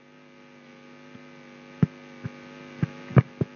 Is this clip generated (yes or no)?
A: no